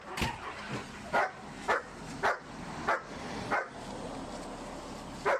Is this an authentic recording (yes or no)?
yes